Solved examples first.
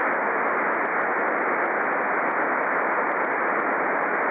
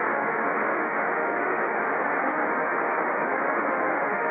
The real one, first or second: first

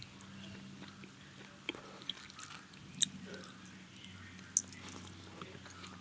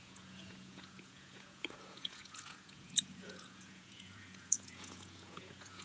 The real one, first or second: first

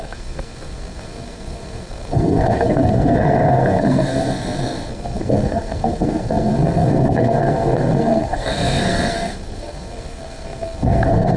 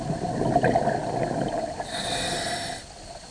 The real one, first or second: second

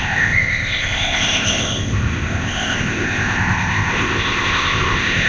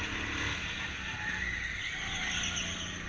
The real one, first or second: second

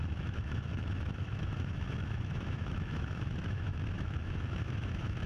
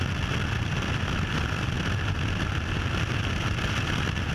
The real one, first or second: second